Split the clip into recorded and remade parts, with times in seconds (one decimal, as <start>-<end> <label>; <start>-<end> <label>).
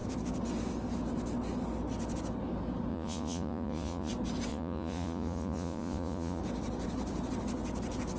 0.0-2.9 recorded; 2.9-4.1 remade; 4.1-4.5 recorded; 4.5-6.4 remade; 6.4-8.2 recorded